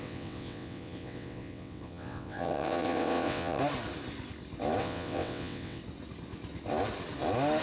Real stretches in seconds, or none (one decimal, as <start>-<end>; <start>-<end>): 3.6-4.8; 5.8-7.6